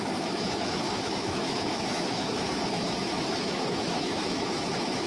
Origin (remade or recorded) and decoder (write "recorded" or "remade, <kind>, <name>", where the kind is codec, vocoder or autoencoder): remade, autoencoder, DAC-VAE